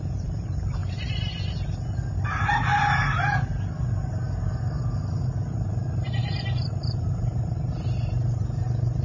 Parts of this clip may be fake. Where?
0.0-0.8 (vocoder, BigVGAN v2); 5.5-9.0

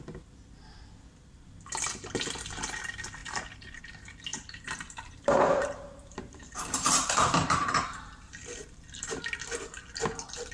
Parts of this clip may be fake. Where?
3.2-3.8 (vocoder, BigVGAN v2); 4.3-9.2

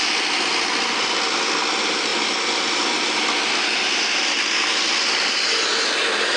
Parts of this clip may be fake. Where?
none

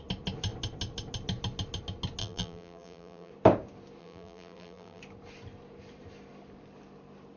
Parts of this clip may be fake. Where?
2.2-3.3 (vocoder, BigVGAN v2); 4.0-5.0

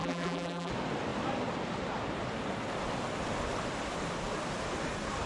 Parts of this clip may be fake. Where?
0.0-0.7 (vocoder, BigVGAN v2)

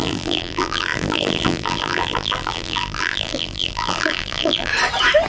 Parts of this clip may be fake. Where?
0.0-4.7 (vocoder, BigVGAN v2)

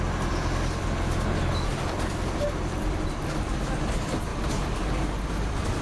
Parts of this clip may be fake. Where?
0.0-5.8 (vocoder, BigVGAN v2)